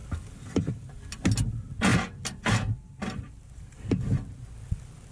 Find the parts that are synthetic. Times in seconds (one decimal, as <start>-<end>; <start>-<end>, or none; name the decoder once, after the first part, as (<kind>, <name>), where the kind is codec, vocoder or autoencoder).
0.0-0.9 (vocoder, BigVGAN v2); 1.9-3.3